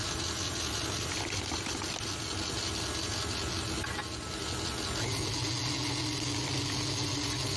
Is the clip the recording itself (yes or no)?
yes